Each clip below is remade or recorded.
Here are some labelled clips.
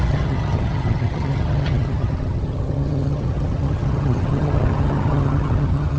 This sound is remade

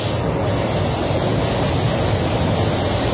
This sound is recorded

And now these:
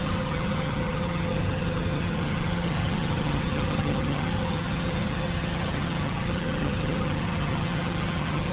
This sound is remade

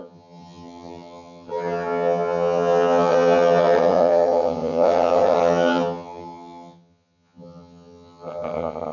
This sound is remade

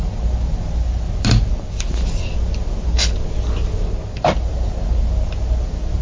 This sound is recorded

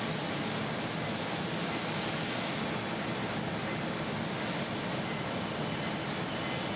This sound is recorded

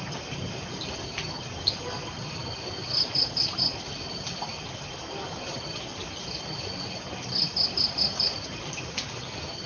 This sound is recorded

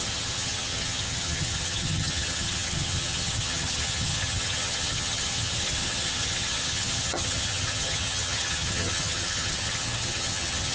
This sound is remade